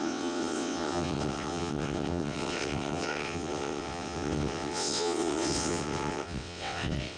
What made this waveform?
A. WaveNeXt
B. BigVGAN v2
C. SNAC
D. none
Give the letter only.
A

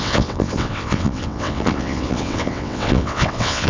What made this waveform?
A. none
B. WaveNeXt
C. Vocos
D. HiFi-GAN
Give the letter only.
B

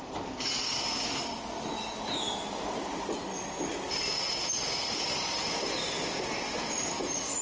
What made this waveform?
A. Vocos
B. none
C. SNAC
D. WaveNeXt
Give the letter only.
B